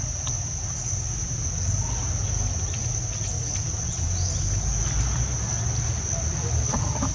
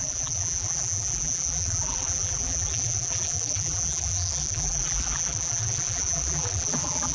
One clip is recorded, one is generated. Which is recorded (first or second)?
first